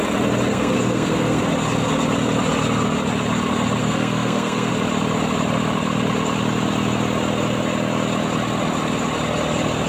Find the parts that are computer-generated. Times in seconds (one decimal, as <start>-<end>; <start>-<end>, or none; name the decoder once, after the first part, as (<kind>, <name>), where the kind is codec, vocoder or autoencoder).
0.5-1.4 (codec, SNAC); 3.8-4.7